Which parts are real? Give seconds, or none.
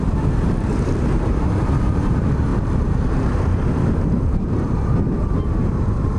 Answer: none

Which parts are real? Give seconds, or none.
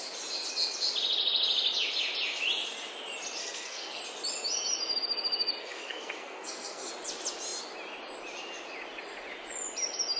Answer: 0.0-3.4; 4.0-5.6; 6.9-10.2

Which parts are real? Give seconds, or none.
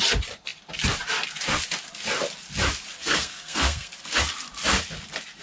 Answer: 0.0-3.0; 3.9-5.4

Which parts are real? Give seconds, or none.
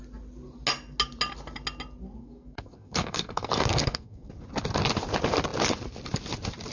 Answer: 0.0-2.2; 4.3-6.7